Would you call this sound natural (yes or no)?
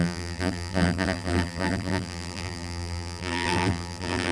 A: no